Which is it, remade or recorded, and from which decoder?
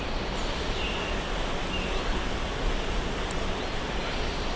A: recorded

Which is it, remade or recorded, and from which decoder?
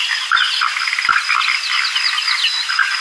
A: recorded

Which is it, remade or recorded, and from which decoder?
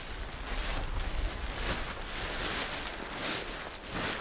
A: recorded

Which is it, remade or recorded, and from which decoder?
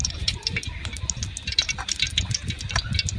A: recorded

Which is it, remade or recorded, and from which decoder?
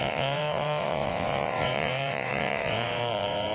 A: remade, vocoder, WaveNeXt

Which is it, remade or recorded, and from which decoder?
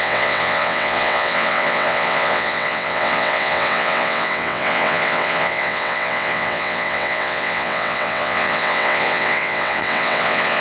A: remade, vocoder, WaveNeXt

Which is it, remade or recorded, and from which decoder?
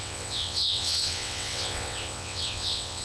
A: remade, vocoder, WaveNeXt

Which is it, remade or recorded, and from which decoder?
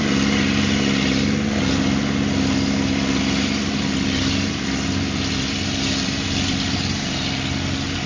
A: recorded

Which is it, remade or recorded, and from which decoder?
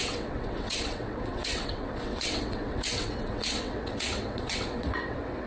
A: remade, vocoder, WaveNeXt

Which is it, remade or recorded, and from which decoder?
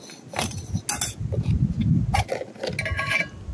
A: recorded